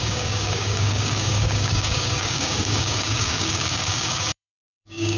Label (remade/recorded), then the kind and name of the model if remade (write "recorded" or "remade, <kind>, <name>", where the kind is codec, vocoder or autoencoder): remade, codec, DAC